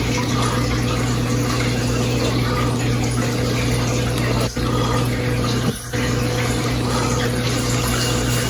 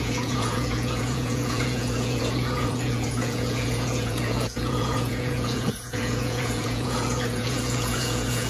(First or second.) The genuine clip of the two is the first